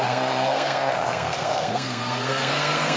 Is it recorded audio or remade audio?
remade